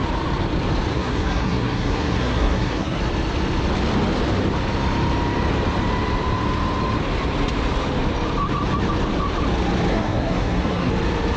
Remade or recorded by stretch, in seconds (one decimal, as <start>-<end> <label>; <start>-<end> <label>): 0.0-0.9 recorded; 0.9-3.0 remade; 3.0-9.9 recorded; 9.9-10.9 remade; 10.9-11.4 recorded